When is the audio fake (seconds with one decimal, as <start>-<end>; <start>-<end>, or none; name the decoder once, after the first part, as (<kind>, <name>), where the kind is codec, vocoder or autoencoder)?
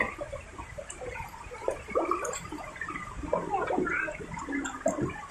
0.5-3.7 (vocoder, BigVGAN v2)